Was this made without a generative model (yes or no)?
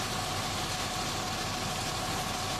yes